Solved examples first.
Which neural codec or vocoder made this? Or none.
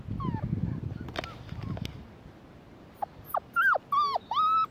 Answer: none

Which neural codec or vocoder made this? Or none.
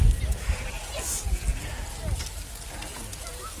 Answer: none